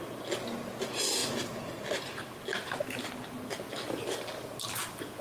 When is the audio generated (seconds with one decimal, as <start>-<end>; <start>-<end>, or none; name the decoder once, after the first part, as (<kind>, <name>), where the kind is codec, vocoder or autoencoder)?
none